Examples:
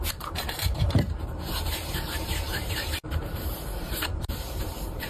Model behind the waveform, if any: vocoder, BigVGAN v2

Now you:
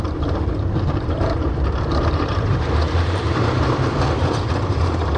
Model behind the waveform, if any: vocoder, BigVGAN v2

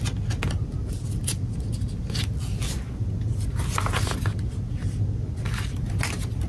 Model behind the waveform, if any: none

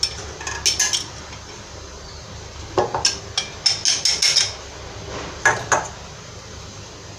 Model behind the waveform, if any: none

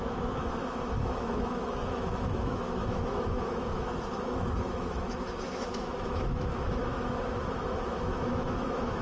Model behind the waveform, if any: autoencoder, DAC-VAE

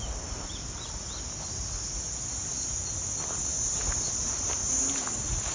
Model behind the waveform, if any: none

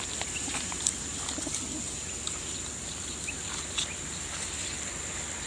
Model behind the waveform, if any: none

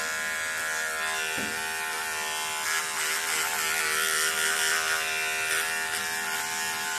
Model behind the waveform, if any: none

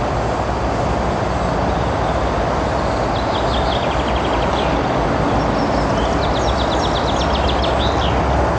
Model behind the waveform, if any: none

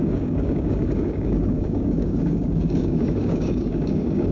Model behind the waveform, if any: codec, DAC